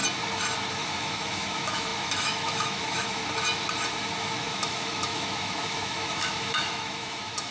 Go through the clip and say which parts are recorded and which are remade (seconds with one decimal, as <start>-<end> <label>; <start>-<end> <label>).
0.0-0.7 recorded; 0.7-3.2 remade; 3.2-4.0 recorded; 4.0-7.5 remade

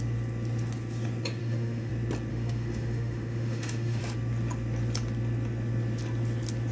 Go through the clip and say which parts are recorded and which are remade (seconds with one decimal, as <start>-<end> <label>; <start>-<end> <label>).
0.0-1.4 recorded; 1.4-1.9 remade; 1.9-2.3 recorded; 2.3-4.0 remade; 4.0-6.7 recorded

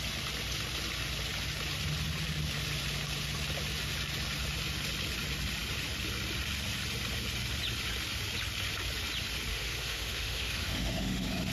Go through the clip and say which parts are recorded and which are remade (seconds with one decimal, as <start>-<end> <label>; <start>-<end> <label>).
0.0-9.5 recorded; 9.5-11.5 remade